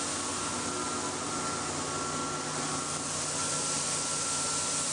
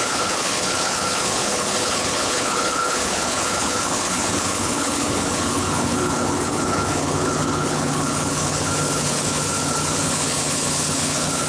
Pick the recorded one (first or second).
first